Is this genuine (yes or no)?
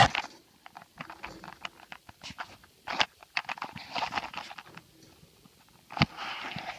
yes